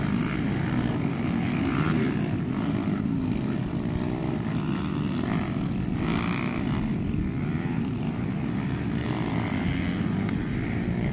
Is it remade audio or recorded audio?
recorded